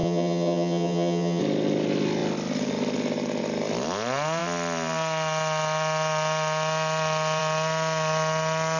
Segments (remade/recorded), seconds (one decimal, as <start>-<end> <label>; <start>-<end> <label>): 0.0-1.4 remade; 1.4-8.8 recorded